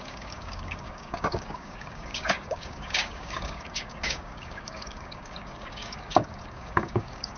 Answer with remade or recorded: remade